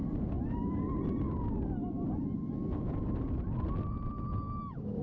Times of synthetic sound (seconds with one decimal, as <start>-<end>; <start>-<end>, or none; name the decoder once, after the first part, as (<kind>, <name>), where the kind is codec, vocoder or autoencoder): none